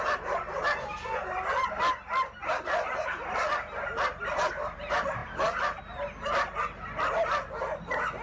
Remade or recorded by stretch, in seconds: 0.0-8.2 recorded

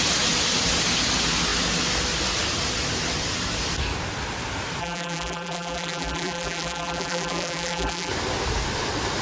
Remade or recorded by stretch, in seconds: 0.0-4.8 recorded; 4.8-8.1 remade; 8.1-9.2 recorded

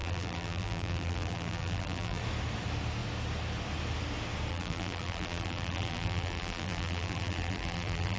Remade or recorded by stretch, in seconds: 0.0-2.2 remade; 2.2-4.5 recorded; 4.5-8.2 remade